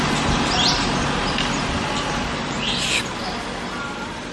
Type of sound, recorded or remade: recorded